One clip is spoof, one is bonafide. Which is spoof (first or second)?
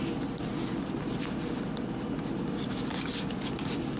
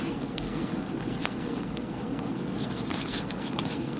second